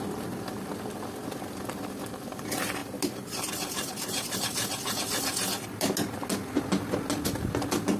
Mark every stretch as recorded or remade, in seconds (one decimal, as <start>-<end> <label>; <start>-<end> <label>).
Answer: 0.0-8.0 recorded